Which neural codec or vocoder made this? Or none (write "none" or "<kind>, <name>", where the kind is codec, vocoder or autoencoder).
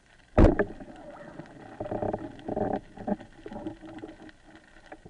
none